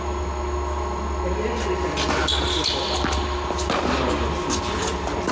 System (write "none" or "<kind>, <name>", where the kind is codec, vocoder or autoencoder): none